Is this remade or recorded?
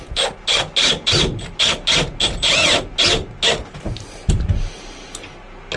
recorded